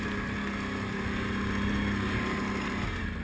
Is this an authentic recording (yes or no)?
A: yes